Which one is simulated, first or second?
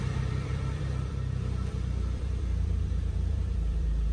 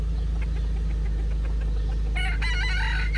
first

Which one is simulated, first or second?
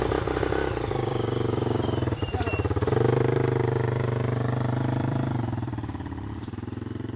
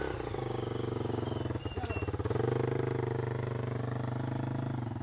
first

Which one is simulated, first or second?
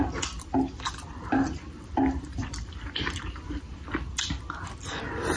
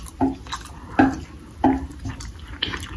first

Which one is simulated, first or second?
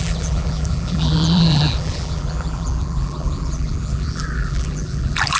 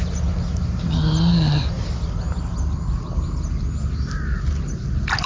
first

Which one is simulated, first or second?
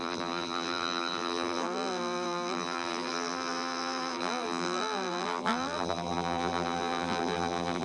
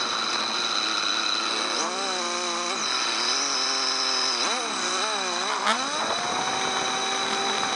first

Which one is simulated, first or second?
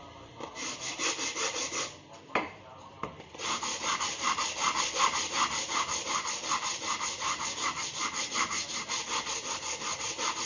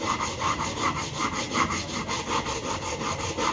first